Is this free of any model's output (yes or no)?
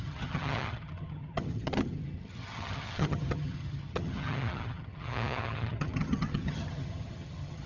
no